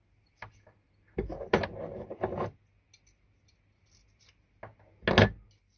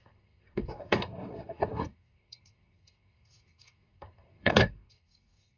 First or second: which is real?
first